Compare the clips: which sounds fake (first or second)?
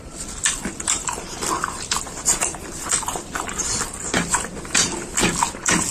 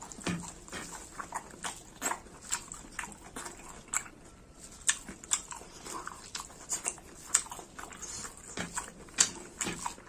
first